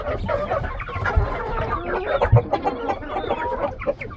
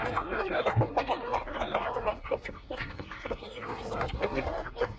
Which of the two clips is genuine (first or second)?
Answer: first